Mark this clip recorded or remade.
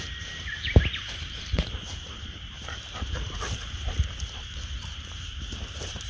remade